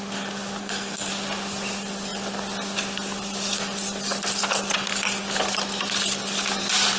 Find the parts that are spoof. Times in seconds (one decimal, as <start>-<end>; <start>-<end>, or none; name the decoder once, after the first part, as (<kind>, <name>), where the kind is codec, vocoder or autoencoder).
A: 0.6-1.1 (codec, SNAC)